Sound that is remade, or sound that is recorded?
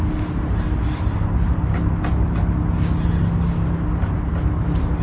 recorded